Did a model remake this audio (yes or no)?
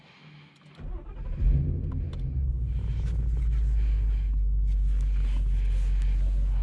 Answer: no